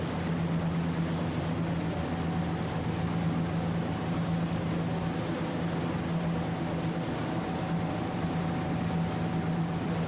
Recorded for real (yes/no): yes